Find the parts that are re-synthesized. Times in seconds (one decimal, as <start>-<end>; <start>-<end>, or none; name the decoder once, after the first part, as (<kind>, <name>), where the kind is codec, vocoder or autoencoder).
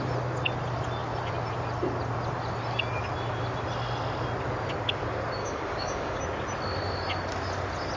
5.4-6.2 (codec, DAC)